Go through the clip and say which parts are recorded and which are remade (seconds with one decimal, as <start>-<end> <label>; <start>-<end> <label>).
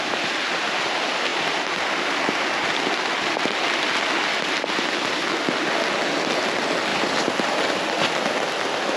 0.0-6.9 recorded; 6.9-8.0 remade; 8.0-9.0 recorded